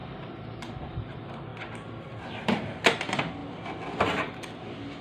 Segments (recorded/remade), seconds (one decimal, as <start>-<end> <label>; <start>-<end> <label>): 0.0-5.0 recorded